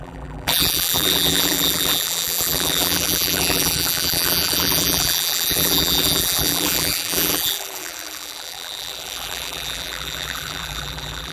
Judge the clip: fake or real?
fake